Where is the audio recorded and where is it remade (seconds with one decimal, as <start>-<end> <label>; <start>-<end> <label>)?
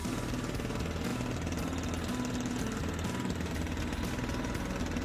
0.0-5.0 recorded